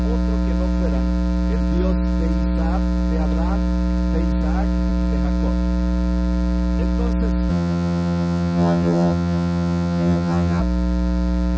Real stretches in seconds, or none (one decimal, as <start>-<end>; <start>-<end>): 0.0-7.5; 10.6-11.6